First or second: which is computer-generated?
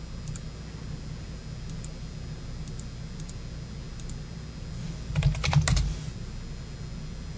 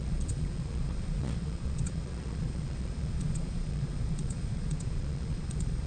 second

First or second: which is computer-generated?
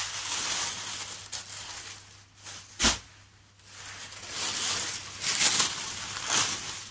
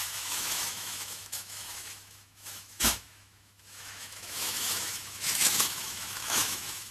second